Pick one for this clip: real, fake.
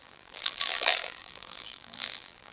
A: fake